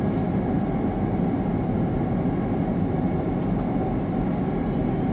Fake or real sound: real